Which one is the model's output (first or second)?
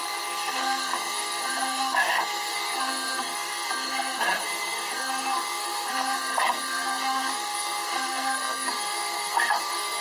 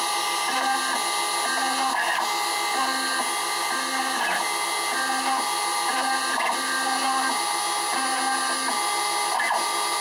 first